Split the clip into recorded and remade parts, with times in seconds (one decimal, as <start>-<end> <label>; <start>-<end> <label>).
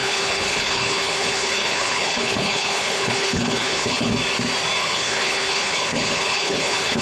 0.0-4.1 remade; 4.1-4.8 recorded; 4.8-7.0 remade